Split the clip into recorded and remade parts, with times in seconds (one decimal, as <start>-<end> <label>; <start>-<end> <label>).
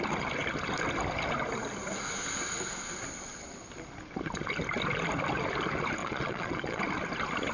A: 0.0-6.0 recorded; 6.0-6.8 remade; 6.8-7.5 recorded